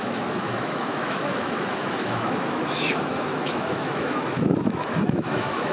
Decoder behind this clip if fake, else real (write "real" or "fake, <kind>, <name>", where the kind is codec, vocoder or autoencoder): fake, autoencoder, DAC-VAE